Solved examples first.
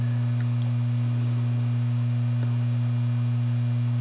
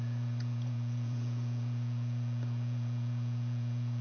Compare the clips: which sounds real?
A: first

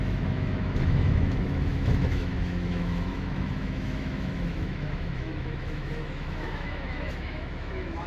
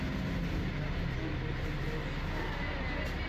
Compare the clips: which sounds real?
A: second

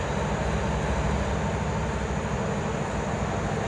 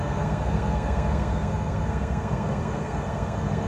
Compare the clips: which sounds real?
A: first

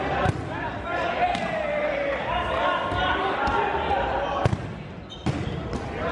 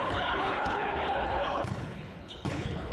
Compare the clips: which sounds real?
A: first